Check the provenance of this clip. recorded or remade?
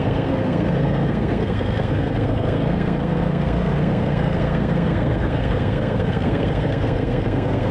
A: remade